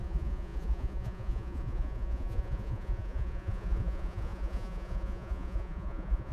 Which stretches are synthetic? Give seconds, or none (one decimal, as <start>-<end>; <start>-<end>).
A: 0.0-6.3